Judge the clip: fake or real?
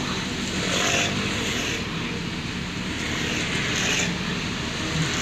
real